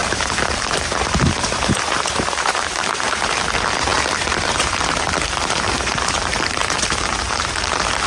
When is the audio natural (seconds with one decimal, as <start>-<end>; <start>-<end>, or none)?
none